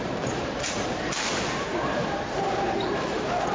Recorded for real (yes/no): no